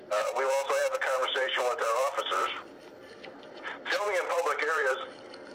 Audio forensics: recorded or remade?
remade